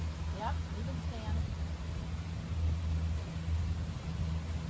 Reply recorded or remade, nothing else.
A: recorded